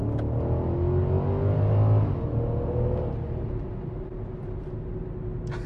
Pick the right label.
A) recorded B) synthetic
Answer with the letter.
A